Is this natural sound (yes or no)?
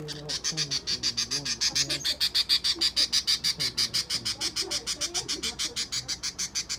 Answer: yes